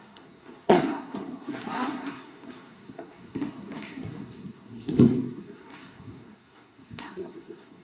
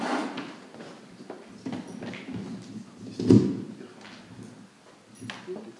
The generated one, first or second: first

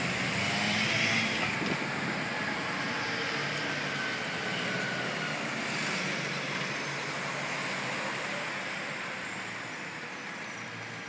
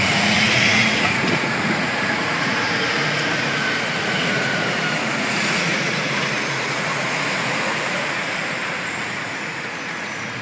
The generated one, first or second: second